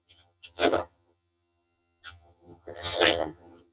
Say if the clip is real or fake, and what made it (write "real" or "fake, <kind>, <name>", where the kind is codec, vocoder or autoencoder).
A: fake, vocoder, HiFi-GAN